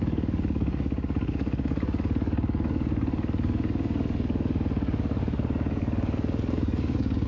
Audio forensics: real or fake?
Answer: fake